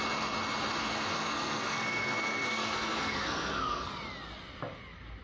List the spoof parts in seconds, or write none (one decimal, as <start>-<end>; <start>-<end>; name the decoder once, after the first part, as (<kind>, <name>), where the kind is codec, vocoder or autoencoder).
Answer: 0.8-3.9 (codec, SNAC)